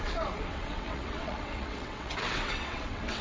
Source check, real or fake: fake